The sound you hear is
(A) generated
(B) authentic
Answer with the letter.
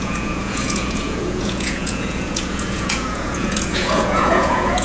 A